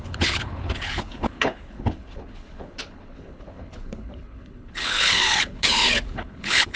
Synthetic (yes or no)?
yes